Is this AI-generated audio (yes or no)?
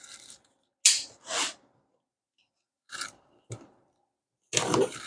no